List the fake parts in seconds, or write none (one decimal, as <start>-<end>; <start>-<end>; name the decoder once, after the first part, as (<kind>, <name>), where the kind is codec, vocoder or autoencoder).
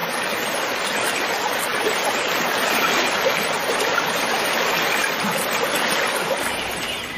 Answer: 1.7-4.4 (vocoder, BigVGAN v2); 6.5-7.2